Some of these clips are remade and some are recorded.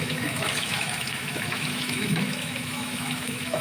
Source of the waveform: remade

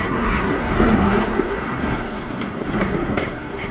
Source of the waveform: remade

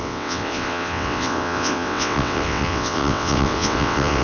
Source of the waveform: remade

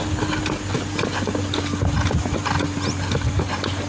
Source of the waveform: recorded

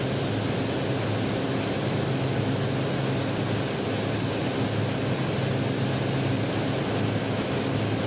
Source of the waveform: recorded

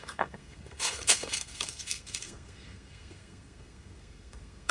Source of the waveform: remade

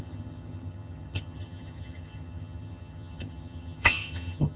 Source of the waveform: remade